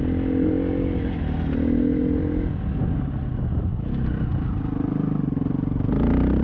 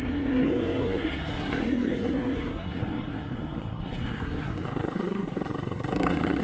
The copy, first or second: second